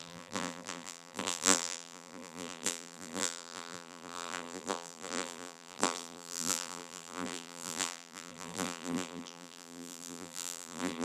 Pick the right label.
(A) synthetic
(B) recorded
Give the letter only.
A